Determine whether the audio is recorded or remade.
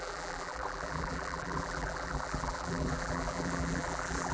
remade